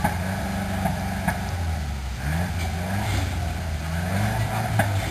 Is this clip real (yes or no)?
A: yes